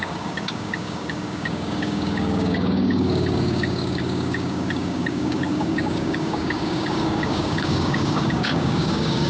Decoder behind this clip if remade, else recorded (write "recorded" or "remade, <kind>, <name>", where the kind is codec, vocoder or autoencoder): remade, codec, DAC